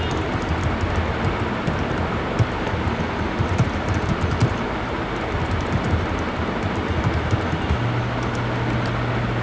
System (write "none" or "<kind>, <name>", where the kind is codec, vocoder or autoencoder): none